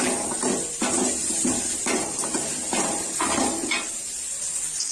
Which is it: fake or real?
real